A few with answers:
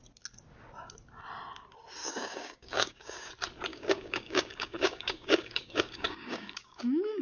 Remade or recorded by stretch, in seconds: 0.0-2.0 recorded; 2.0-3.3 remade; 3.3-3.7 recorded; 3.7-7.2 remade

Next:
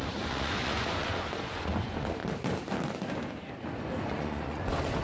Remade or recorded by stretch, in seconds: 0.0-2.2 remade; 2.2-4.0 recorded; 4.0-5.0 remade

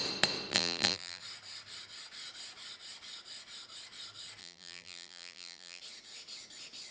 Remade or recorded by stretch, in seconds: 0.0-0.5 recorded; 0.5-1.2 remade; 1.2-4.4 recorded; 4.4-5.8 remade; 5.8-6.9 recorded

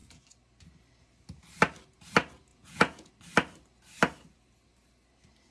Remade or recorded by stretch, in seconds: 0.0-2.5 recorded; 2.5-3.1 remade; 3.1-5.5 recorded

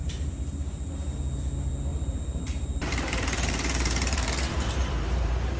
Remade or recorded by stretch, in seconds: 0.0-1.2 remade; 1.2-1.9 recorded; 1.9-5.6 remade